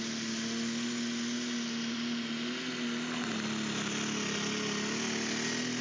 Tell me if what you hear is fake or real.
real